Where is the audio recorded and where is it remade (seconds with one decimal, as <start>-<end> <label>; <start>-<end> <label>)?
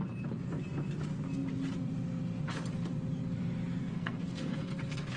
0.0-3.8 recorded; 3.8-4.8 remade; 4.8-5.2 recorded